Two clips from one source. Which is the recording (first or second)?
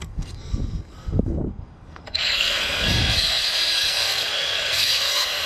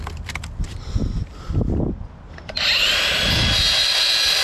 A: second